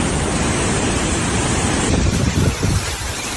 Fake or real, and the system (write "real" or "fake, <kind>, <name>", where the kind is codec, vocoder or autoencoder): fake, vocoder, BigVGAN v2